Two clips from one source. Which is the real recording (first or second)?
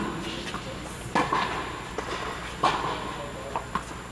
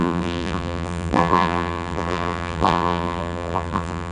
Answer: first